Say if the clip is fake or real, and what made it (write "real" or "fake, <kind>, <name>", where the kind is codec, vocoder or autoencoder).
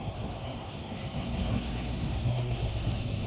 fake, codec, SNAC